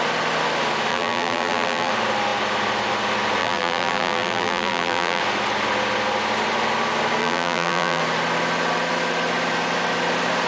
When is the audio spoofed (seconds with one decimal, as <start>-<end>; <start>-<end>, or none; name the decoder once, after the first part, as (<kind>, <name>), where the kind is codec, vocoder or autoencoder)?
0.9-1.9 (vocoder, BigVGAN v2); 3.4-5.2; 7.2-8.0